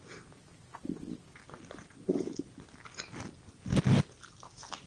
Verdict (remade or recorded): recorded